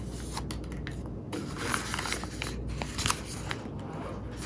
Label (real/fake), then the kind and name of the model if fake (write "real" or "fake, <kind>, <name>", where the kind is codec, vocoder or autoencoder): real